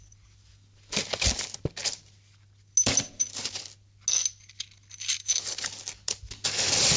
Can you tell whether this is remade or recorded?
recorded